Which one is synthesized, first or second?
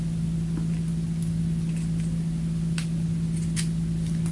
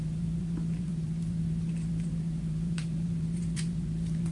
second